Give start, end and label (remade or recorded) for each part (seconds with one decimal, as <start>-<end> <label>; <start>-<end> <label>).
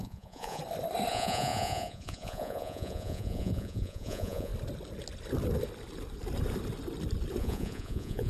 0.0-0.6 remade; 0.6-1.1 recorded; 1.1-4.5 remade; 4.5-7.4 recorded; 7.4-8.3 remade